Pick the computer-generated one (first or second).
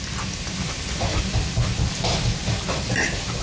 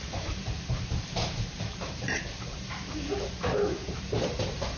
second